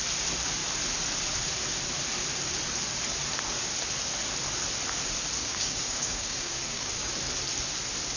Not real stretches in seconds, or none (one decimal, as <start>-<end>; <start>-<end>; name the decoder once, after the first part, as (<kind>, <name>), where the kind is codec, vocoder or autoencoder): 5.4-7.1 (codec, DAC)

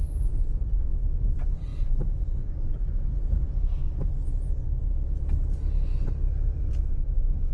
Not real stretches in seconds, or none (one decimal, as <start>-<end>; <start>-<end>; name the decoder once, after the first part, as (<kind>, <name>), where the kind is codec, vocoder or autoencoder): 1.7-3.5 (vocoder, BigVGAN v2); 5.9-6.6